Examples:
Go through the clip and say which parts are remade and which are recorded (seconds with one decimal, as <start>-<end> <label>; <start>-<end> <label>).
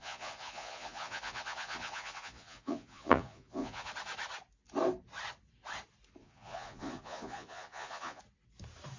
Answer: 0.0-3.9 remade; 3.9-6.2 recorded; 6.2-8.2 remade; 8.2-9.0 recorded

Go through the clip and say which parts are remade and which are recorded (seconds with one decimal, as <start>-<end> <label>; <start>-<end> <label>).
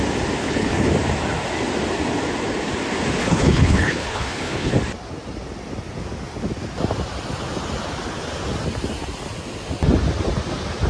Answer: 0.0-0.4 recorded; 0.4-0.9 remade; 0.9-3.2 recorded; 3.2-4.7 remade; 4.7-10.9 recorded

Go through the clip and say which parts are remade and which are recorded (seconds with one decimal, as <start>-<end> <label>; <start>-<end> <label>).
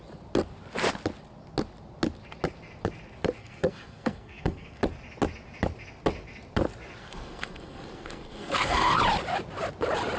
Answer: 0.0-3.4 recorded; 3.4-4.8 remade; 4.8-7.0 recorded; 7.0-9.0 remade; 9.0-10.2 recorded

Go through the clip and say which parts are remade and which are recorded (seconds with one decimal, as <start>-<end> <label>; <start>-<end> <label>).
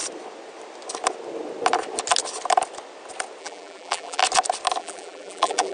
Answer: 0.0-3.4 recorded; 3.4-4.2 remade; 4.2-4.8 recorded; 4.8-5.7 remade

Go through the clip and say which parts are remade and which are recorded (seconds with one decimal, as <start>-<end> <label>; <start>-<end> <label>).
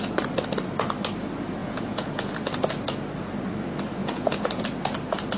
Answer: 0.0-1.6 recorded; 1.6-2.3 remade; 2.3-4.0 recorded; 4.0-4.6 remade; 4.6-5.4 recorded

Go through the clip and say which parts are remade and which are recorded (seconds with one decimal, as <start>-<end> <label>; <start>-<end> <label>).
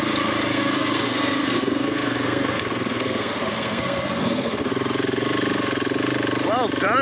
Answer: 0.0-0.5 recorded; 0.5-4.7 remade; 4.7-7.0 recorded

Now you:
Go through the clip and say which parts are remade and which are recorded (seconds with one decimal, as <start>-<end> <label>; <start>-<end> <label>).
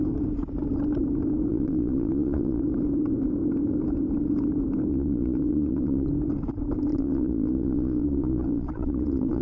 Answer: 0.0-1.5 recorded; 1.5-2.6 remade; 2.6-4.9 recorded; 4.9-6.1 remade; 6.1-6.9 recorded; 6.9-9.4 remade